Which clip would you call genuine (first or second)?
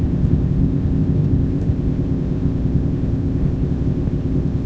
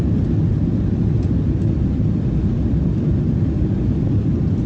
second